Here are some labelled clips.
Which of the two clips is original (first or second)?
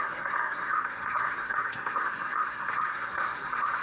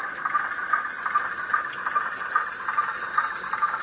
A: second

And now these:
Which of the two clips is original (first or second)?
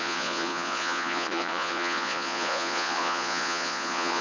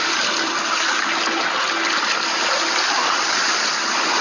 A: second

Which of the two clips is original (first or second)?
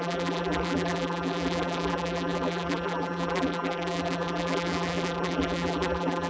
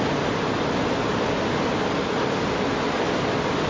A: second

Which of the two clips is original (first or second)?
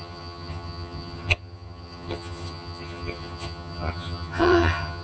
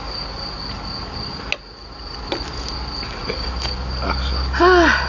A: second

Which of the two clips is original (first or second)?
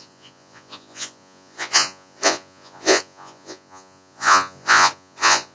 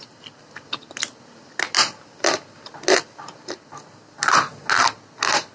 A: second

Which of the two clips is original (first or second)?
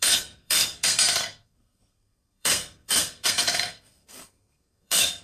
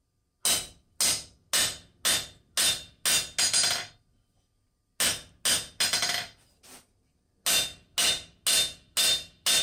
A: second